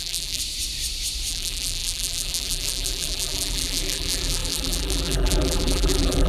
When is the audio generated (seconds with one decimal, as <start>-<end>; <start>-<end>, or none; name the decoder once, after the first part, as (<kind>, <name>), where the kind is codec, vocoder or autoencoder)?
0.0-0.4 (vocoder, BigVGAN v2); 1.3-6.3